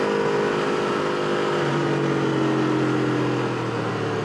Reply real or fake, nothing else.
real